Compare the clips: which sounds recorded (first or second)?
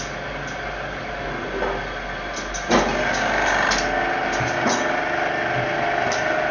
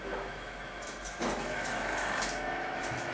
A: first